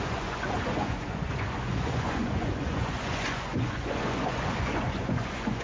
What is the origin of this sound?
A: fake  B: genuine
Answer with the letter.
A